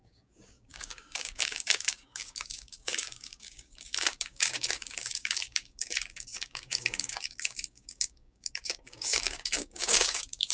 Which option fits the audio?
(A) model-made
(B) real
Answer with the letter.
A